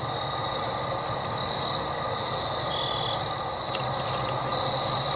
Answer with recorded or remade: recorded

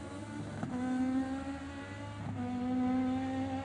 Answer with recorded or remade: recorded